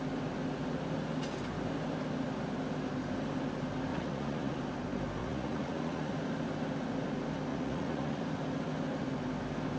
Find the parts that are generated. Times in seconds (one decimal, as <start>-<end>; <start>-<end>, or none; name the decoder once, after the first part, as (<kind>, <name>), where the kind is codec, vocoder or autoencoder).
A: 3.9-4.6 (vocoder, Vocos); 5.2-6.1; 7.5-8.2